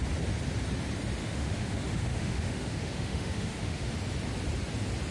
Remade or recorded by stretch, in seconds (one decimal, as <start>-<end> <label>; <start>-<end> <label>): 0.0-1.2 recorded; 1.2-3.9 remade; 3.9-5.1 recorded

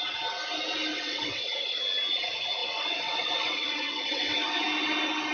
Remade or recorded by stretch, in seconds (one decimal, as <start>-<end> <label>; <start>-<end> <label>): 0.0-0.9 recorded; 0.9-1.8 remade; 1.8-2.6 recorded; 2.6-4.6 remade; 4.6-5.3 recorded

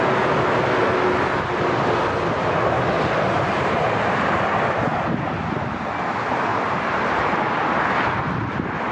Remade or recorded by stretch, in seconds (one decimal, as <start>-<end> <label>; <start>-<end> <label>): 0.0-2.4 recorded; 2.4-4.4 remade; 4.4-6.5 recorded; 6.5-7.2 remade; 7.2-8.9 recorded

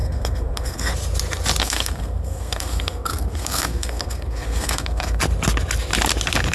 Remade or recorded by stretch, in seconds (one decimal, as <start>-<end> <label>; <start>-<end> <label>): 0.0-0.9 remade; 0.9-1.6 recorded; 1.6-5.2 remade; 5.2-6.5 recorded

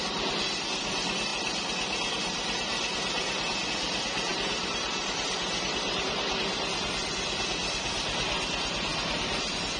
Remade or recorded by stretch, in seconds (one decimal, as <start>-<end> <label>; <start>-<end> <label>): 0.0-4.3 recorded; 4.3-6.3 remade; 6.3-9.8 recorded

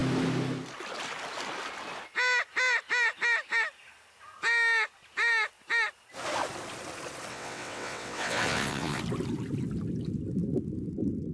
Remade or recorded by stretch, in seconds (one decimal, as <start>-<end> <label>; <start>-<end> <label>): 0.0-7.3 recorded; 7.3-9.0 remade; 9.0-11.3 recorded

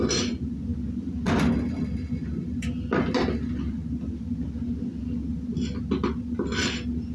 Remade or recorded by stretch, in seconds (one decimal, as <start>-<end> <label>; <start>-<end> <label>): 0.0-7.1 recorded

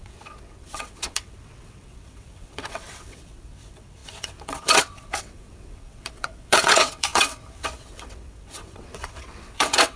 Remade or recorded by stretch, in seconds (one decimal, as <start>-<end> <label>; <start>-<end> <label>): 0.0-10.0 remade